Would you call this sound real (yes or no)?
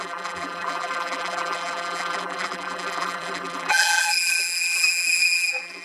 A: no